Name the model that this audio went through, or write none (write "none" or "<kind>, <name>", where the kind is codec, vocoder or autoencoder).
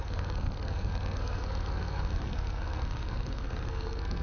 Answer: codec, SNAC